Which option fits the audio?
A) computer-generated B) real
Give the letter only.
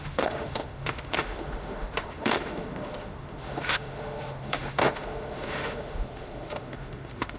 A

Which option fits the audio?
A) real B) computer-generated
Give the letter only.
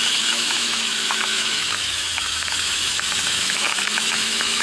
B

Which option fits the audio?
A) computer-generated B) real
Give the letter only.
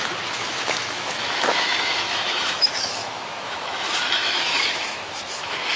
A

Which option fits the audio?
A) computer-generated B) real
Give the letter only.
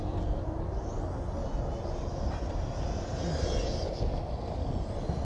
B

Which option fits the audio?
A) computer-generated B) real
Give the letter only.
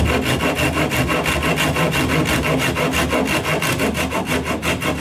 B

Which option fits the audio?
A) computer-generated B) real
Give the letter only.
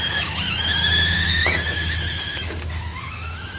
A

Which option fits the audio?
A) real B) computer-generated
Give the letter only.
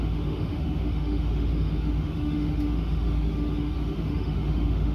B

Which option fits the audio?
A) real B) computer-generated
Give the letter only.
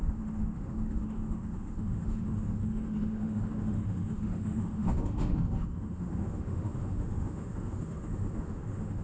B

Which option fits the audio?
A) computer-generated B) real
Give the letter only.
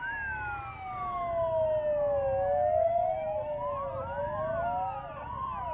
B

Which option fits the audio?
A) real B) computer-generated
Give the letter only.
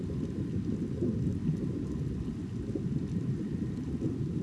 A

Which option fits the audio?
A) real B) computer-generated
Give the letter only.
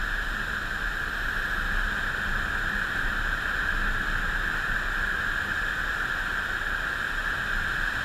A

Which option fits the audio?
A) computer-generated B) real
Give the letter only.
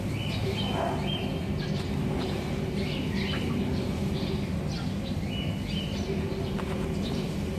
B